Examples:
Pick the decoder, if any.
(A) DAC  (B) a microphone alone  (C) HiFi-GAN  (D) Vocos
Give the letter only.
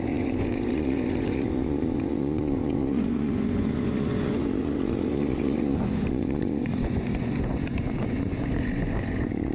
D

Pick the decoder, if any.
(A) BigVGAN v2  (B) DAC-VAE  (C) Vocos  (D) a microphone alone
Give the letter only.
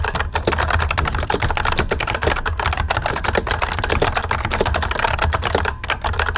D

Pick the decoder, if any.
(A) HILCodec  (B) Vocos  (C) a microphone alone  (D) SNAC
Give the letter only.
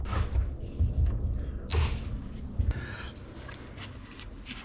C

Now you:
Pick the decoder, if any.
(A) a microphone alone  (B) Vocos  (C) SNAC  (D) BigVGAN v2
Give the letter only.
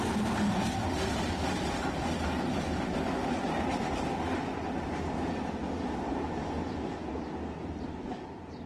A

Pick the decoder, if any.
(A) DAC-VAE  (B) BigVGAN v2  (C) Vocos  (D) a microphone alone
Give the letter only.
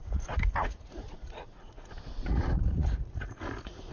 C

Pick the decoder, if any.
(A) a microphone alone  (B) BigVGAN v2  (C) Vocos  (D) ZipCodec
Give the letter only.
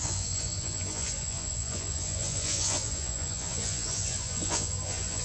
C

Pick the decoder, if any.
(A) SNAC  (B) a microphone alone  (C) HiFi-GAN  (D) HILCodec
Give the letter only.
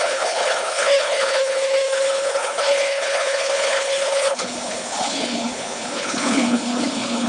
D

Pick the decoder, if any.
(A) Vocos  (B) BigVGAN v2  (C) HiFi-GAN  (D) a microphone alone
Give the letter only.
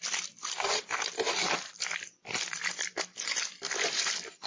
D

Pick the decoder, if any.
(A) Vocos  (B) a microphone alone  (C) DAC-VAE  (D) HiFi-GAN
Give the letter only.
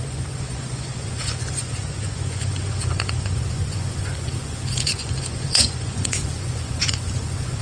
A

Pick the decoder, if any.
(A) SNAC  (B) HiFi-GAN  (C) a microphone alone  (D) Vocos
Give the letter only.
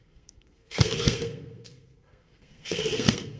A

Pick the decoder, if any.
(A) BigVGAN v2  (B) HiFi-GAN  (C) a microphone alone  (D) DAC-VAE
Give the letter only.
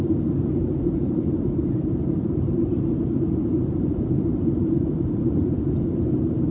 A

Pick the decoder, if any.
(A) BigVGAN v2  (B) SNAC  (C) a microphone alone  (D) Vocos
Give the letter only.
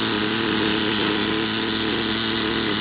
C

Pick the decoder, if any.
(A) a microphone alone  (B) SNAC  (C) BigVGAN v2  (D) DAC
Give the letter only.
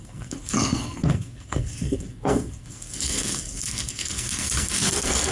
B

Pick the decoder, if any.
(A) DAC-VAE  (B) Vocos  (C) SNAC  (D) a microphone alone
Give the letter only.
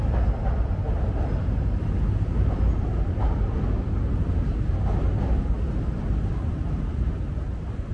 D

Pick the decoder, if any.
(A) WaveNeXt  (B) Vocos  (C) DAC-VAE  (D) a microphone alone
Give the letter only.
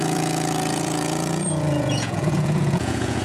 B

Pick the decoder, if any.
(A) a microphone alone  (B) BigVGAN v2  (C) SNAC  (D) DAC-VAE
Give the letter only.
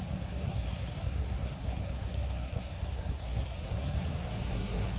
C